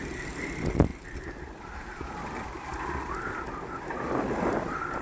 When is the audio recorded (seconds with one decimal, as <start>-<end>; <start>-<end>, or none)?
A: 0.9-3.8